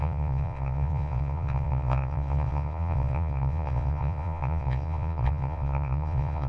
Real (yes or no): no